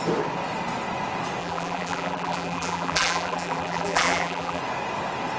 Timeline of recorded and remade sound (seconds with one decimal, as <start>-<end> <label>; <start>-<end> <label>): 0.0-1.4 recorded; 1.4-4.6 remade; 4.6-5.4 recorded